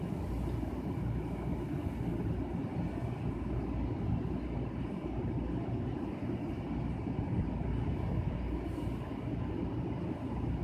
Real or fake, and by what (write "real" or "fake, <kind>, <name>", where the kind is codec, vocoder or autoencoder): real